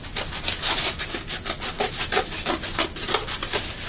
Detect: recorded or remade recorded